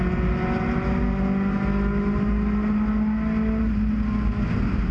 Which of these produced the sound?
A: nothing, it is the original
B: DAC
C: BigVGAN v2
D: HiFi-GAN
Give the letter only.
A